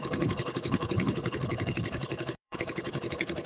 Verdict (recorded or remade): remade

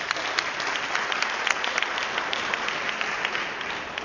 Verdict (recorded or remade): recorded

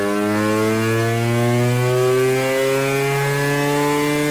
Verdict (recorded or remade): recorded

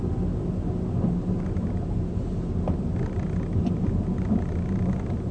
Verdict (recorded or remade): recorded